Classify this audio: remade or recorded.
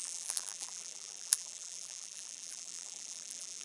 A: remade